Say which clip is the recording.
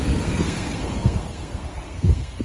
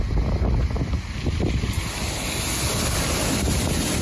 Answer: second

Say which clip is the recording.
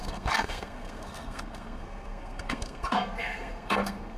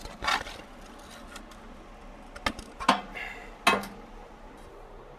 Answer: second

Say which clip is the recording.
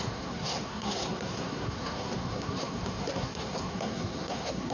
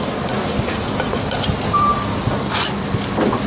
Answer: second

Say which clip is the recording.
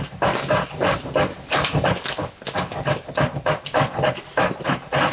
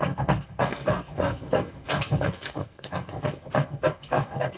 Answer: first